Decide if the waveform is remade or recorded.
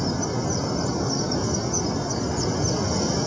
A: recorded